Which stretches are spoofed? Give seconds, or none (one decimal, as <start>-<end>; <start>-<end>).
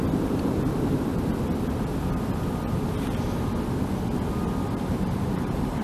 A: 0.9-1.3; 4.8-5.8